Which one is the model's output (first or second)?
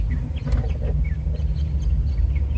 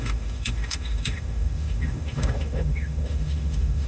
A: second